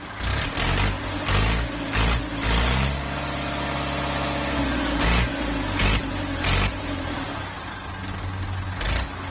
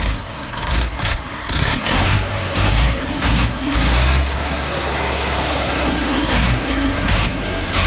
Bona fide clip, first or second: first